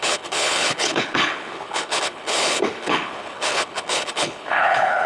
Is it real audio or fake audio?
fake